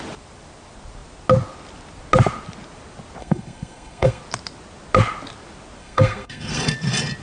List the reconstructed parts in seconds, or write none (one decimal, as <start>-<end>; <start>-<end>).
3.2-4.2; 5.8-6.6